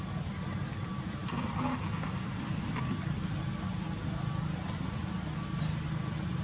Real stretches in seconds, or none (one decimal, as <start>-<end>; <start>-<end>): 0.0-6.4